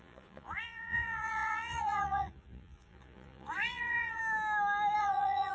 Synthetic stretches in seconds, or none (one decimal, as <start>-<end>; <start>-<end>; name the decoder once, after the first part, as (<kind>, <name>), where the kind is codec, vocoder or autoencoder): 0.0-4.2 (vocoder, Vocos); 5.0-5.5